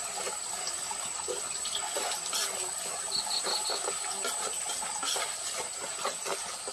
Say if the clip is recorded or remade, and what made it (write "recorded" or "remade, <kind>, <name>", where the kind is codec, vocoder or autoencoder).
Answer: recorded